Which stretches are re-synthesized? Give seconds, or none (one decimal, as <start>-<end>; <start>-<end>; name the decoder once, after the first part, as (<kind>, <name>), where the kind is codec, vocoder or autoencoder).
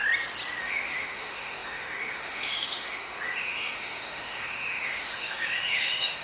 0.6-6.2 (autoencoder, DAC-VAE)